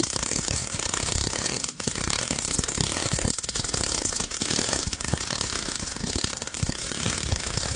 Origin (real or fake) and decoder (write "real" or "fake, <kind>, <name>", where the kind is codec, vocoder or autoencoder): fake, codec, SNAC